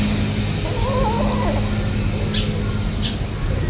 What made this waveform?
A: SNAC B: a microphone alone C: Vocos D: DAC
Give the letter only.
B